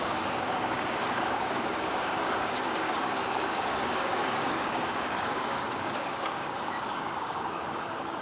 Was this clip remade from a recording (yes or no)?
yes